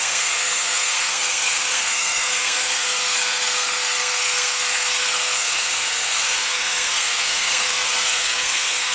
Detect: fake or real fake